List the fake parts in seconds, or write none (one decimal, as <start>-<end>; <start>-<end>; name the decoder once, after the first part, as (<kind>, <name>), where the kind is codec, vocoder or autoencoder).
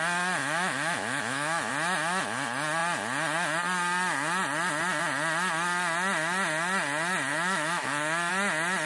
0.4-1.7 (autoencoder, DAC-VAE); 7.3-8.3